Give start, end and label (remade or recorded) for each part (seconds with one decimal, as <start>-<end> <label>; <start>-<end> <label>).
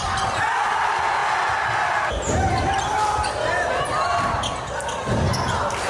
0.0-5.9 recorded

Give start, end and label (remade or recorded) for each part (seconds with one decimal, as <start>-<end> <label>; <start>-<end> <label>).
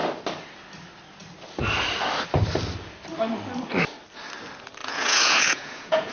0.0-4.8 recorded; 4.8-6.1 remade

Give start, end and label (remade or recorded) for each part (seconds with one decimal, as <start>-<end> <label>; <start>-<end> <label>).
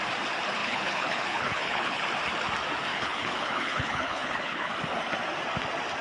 0.0-0.6 recorded; 0.6-2.0 remade; 2.0-2.9 recorded; 2.9-4.7 remade; 4.7-6.0 recorded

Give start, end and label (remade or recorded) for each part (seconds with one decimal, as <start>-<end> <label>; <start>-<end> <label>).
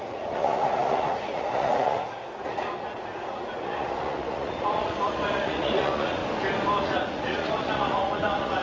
0.0-6.2 remade; 6.2-6.8 recorded; 6.8-8.6 remade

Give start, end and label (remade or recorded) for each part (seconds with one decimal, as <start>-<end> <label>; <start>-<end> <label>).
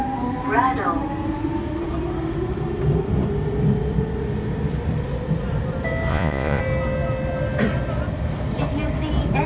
0.0-6.1 recorded; 6.1-6.6 remade; 6.6-9.5 recorded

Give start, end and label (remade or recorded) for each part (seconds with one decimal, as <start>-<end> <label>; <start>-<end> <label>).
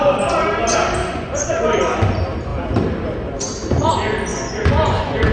0.0-1.0 recorded; 1.0-1.5 remade; 1.5-4.3 recorded; 4.3-5.3 remade